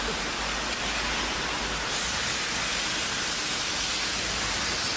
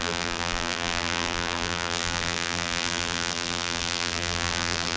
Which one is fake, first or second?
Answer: second